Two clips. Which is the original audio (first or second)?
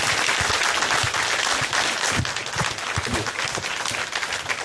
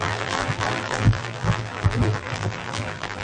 first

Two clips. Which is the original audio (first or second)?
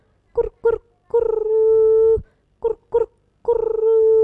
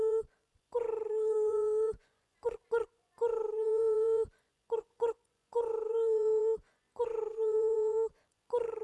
first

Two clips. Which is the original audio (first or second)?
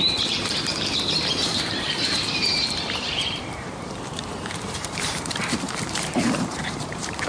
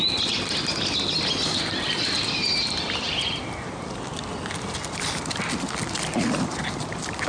second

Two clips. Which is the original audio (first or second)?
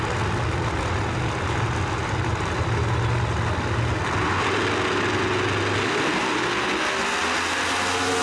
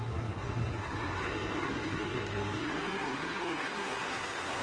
first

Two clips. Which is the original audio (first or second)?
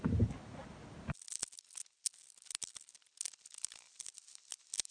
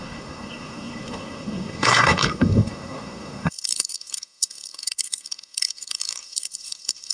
first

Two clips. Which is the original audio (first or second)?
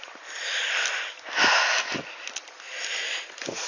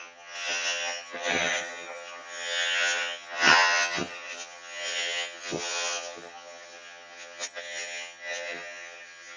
first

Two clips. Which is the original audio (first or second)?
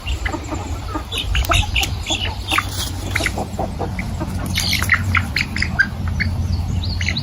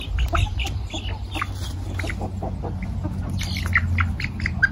second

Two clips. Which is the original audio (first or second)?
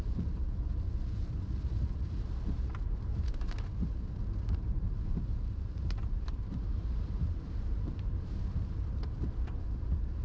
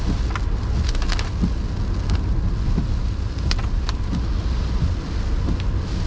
second